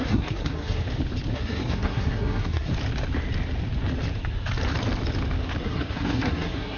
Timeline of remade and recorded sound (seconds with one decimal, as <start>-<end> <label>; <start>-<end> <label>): 0.0-0.8 remade; 0.8-1.3 recorded; 1.3-2.7 remade; 2.7-5.6 recorded; 5.6-6.8 remade